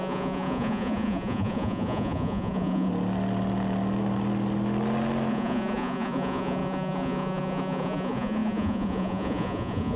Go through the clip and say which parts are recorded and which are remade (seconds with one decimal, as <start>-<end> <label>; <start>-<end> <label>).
0.0-2.9 remade; 2.9-5.3 recorded; 5.3-10.0 remade